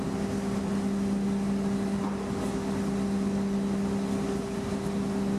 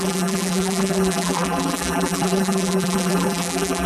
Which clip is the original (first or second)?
first